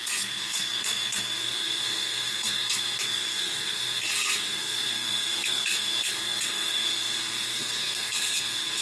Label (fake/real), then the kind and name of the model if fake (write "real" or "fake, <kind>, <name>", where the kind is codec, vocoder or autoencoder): fake, codec, SNAC